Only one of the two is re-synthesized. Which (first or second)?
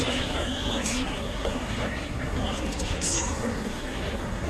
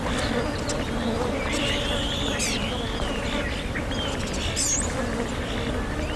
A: first